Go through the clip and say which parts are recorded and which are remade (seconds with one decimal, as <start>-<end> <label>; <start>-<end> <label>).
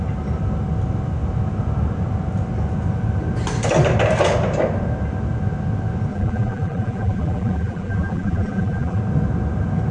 0.0-6.1 recorded; 6.1-9.0 remade; 9.0-9.9 recorded